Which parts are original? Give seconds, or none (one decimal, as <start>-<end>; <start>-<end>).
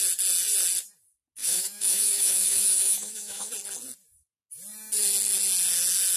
0.0-1.4; 3.5-6.2